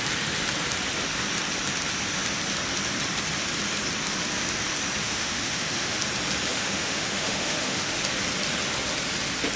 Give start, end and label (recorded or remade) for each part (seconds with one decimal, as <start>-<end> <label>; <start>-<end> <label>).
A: 0.0-5.0 recorded; 5.0-6.0 remade; 6.0-6.5 recorded; 6.5-8.0 remade; 8.0-9.6 recorded